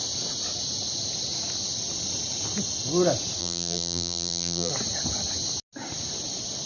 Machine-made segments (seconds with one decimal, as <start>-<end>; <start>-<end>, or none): 3.4-4.7